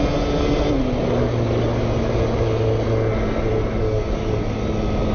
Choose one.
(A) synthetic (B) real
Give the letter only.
B